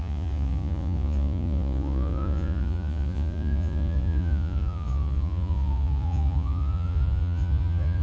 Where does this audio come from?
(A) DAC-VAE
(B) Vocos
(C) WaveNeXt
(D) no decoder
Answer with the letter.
B